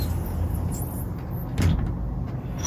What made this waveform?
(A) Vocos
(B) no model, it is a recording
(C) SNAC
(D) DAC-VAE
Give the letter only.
B